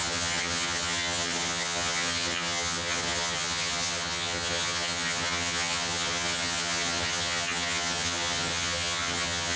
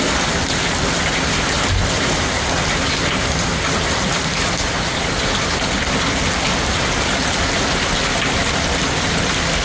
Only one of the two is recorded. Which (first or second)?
second